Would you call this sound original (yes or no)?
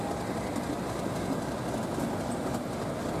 yes